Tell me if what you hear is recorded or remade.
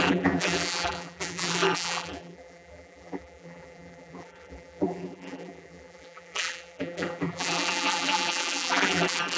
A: remade